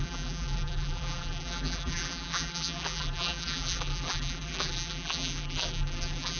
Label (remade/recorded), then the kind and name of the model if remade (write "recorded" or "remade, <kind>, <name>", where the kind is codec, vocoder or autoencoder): remade, vocoder, BigVGAN v2